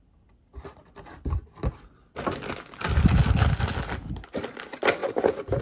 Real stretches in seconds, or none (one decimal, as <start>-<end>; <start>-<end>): 0.0-5.6